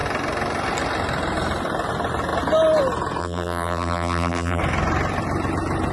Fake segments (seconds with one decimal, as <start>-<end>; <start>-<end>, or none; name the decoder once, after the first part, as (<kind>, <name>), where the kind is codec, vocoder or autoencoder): 3.2-4.6 (vocoder, BigVGAN v2)